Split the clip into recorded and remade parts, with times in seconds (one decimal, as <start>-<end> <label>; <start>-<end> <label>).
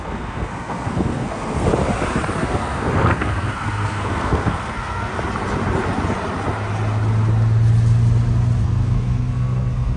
0.0-1.7 remade; 1.7-2.4 recorded; 2.4-5.1 remade; 5.1-8.6 recorded; 8.6-10.0 remade